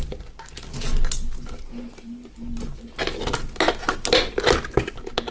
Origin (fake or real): real